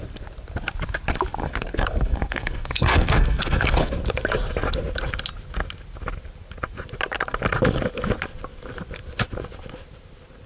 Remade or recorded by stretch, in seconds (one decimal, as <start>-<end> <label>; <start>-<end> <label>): 0.0-1.4 recorded; 1.4-3.9 remade; 3.9-10.5 recorded